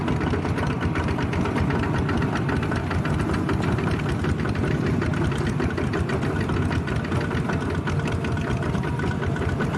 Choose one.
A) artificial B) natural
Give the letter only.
B